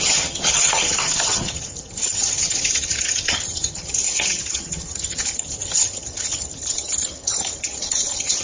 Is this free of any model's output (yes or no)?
no